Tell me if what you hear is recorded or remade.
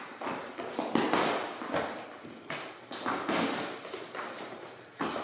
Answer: recorded